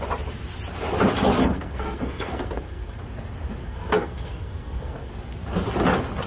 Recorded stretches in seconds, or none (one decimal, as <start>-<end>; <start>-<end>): 0.0-1.4; 3.0-3.6; 5.1-6.3